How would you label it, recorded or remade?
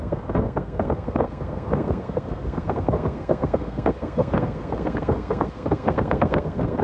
remade